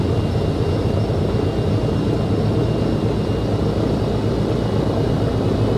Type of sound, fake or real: real